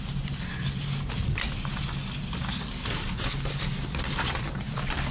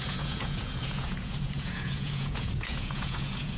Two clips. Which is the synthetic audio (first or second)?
second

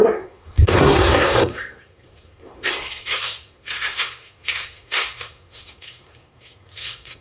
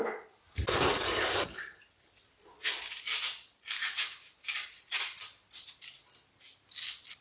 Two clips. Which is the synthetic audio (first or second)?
first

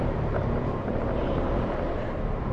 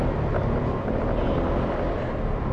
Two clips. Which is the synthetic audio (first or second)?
first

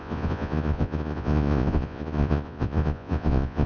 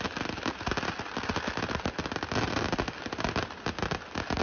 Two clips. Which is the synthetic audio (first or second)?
first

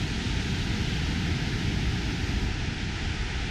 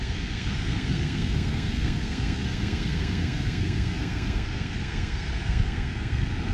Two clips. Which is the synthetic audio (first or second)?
second